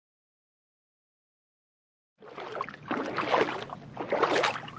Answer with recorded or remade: recorded